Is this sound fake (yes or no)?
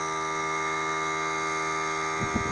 no